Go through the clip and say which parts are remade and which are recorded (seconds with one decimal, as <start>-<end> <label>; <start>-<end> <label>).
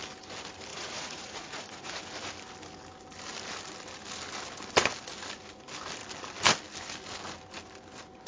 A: 0.0-0.7 recorded; 0.7-2.0 remade; 2.0-8.3 recorded